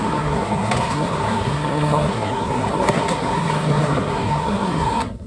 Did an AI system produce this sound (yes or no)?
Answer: yes